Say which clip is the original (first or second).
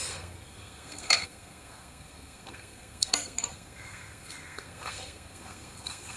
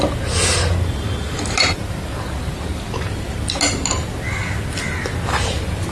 second